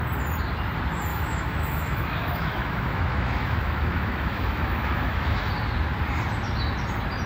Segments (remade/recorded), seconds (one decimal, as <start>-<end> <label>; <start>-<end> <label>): 0.0-1.1 recorded; 1.1-5.5 remade; 5.5-7.3 recorded